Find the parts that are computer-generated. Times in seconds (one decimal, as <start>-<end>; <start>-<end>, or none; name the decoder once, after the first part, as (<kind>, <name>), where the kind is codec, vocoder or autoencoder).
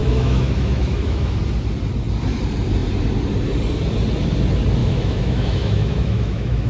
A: 0.0-1.4 (autoencoder, DAC-VAE); 4.8-6.7